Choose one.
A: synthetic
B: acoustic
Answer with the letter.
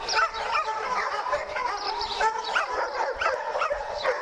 A